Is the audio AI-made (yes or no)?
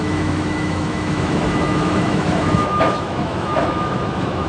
yes